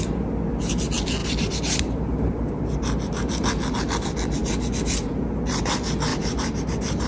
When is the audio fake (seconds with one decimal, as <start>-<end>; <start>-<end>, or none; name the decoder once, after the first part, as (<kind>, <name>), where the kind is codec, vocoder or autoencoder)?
1.2-2.6 (vocoder, BigVGAN v2); 6.1-7.1